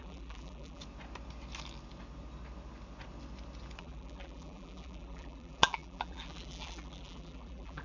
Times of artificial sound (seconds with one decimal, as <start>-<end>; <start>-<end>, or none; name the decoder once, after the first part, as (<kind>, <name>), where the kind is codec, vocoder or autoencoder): 0.0-0.8 (vocoder, BigVGAN v2); 3.8-7.8